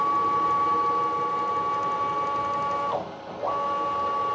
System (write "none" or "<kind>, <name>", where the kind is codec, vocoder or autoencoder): none